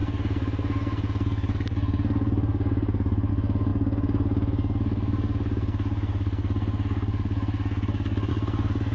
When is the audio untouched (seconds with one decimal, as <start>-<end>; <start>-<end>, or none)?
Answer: none